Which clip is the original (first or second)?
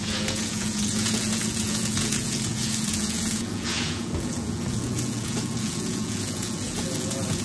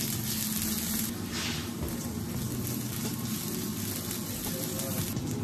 second